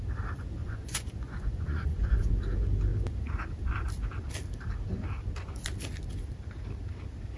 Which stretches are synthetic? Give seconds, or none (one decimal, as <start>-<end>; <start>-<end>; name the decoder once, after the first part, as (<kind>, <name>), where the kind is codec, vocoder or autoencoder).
0.6-2.3 (vocoder, Vocos)